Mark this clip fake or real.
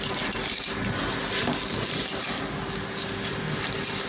real